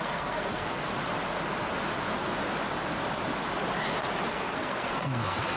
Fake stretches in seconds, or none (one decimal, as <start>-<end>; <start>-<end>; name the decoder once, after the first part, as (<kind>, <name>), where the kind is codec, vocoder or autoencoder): 0.0-0.9 (codec, SNAC); 4.3-5.6